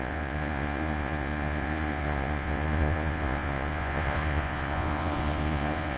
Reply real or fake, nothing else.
fake